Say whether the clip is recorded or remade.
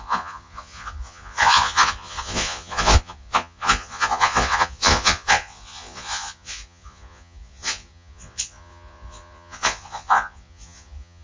remade